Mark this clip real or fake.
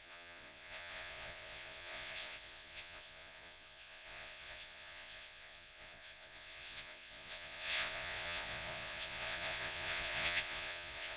fake